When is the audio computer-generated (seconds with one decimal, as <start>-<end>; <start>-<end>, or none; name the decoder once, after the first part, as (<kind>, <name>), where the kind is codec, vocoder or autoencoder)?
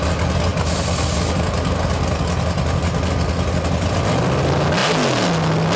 none